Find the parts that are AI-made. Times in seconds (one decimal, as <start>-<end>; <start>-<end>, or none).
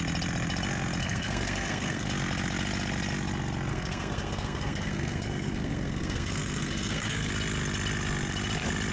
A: 1.0-2.1; 3.7-7.3